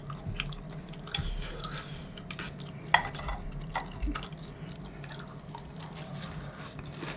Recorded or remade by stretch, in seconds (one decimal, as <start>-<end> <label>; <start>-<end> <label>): 0.0-7.2 recorded